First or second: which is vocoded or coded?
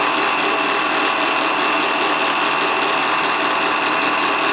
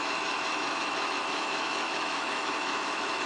second